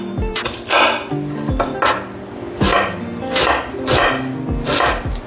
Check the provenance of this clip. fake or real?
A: real